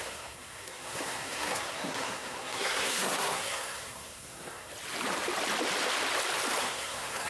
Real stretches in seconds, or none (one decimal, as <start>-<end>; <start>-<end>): 4.7-6.6